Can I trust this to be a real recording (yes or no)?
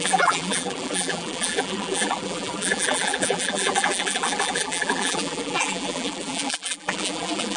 no